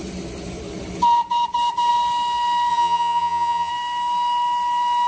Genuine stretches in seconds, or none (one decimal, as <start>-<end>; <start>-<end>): 0.0-2.7; 3.7-5.1